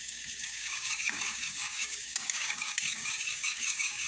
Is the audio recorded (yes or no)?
no